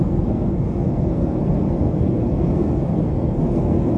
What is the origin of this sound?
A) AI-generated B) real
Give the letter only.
A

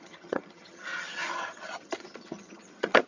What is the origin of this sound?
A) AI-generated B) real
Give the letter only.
A